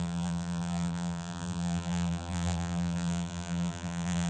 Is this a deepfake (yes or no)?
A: yes